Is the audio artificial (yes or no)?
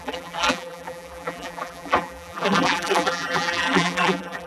yes